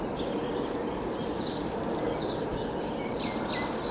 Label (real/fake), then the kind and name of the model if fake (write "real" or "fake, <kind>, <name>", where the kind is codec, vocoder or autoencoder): real